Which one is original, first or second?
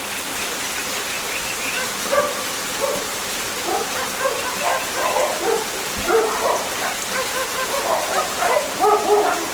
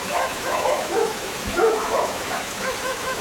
first